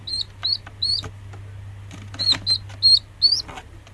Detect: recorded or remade recorded